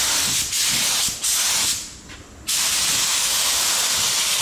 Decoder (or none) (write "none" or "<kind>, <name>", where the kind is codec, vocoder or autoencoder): none